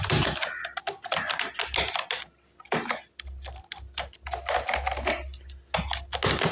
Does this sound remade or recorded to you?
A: recorded